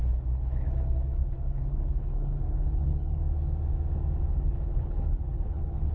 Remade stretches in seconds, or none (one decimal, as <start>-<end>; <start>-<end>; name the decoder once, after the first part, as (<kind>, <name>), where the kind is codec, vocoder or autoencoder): 0.0-3.2 (codec, HILCodec); 4.3-5.9